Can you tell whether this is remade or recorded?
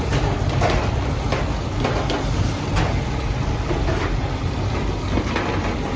recorded